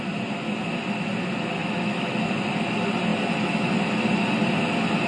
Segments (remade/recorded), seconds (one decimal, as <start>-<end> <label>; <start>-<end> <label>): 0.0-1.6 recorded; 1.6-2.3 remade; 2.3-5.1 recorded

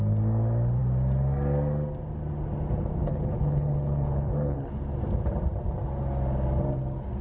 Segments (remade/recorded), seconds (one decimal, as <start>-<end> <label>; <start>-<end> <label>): 0.0-3.0 recorded; 3.0-4.8 remade; 4.8-7.2 recorded

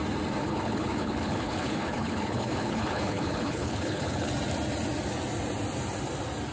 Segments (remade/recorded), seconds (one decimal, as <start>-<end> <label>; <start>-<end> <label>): 0.0-0.4 recorded; 0.4-4.3 remade; 4.3-6.5 recorded